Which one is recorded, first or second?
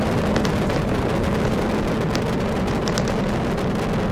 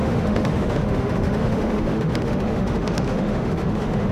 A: first